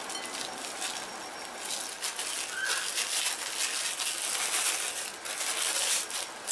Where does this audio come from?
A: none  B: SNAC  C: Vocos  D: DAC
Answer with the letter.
A